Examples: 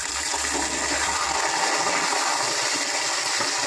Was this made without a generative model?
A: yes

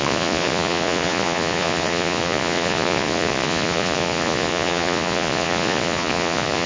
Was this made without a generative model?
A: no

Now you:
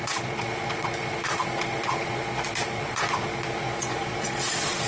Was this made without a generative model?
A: no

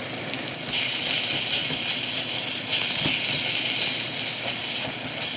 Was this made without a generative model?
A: yes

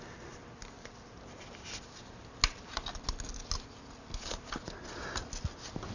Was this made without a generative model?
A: yes